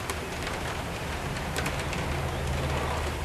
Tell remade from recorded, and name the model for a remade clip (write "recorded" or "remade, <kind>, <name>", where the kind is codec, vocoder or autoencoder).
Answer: recorded